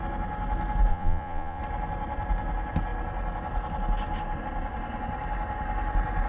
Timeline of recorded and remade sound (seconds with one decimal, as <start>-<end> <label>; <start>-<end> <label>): 0.0-0.9 recorded; 0.9-1.6 remade; 1.6-6.3 recorded